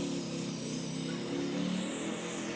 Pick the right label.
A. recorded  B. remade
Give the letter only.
A